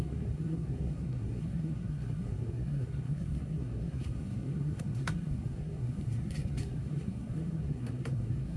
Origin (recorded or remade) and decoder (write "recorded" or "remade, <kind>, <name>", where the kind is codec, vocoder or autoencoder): remade, codec, SNAC